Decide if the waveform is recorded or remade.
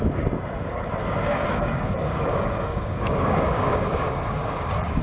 remade